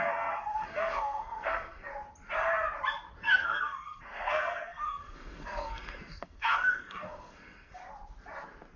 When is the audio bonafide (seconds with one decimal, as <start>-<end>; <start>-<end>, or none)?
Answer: 1.9-3.2; 7.8-8.8